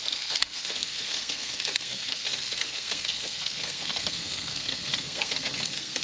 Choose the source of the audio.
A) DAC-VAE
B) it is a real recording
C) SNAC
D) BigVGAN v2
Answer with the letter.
C